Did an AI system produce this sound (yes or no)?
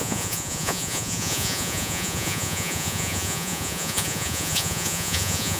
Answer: yes